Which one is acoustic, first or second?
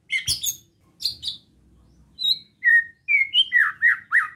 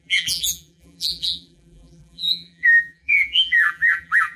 first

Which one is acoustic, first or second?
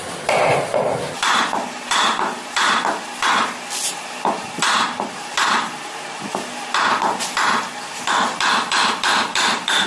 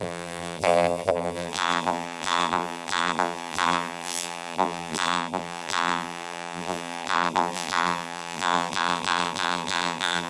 first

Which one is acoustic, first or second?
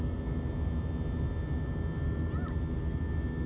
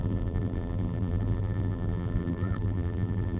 first